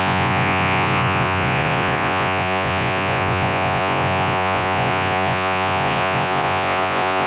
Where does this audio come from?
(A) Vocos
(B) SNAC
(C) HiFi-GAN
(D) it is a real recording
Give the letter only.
A